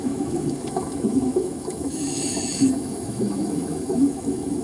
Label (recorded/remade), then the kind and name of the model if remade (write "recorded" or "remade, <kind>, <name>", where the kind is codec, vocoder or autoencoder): remade, autoencoder, DAC-VAE